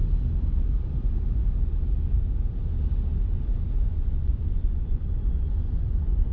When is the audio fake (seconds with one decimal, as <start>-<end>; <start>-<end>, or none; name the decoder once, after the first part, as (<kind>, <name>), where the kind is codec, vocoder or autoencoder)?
3.8-6.3 (vocoder, Vocos)